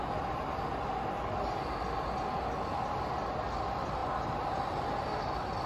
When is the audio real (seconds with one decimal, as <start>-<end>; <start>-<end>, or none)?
0.0-5.7